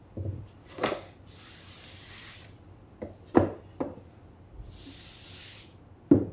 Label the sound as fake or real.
real